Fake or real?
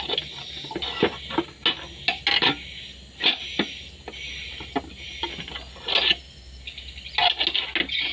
real